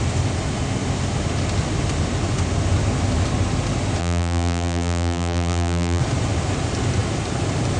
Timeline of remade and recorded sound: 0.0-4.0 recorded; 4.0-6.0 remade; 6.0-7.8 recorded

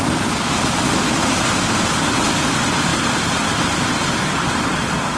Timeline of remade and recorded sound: 0.0-5.2 recorded

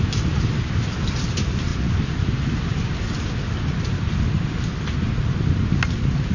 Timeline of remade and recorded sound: 0.0-6.3 recorded

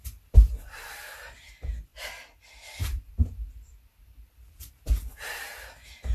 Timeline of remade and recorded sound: 0.0-1.9 recorded; 1.9-4.7 remade; 4.7-6.1 recorded

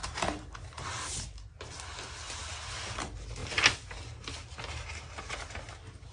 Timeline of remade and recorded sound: 0.0-0.8 remade; 0.8-6.1 recorded

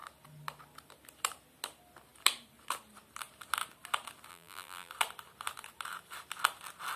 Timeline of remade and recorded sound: 0.0-4.3 recorded; 4.3-4.9 remade; 4.9-7.0 recorded